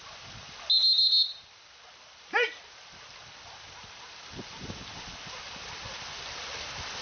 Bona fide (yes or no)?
yes